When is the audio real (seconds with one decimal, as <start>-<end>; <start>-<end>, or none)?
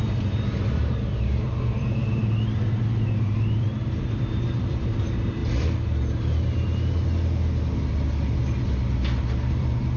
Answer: 2.2-2.8; 5.4-9.5